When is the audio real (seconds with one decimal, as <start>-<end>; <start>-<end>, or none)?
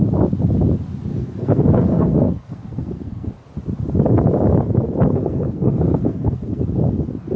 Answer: 0.0-1.1; 3.3-5.1; 6.6-7.4